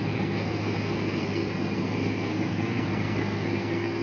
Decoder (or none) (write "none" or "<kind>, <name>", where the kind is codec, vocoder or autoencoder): codec, SNAC